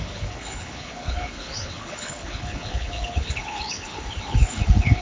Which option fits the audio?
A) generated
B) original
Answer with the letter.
A